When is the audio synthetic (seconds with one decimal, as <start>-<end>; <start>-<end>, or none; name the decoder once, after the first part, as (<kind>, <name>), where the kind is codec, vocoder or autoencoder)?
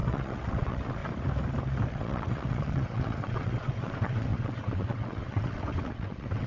0.0-1.0 (vocoder, WaveNeXt); 1.9-6.5